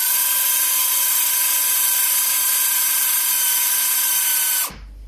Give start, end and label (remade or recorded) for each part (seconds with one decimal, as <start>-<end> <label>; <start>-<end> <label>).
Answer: 0.0-5.1 recorded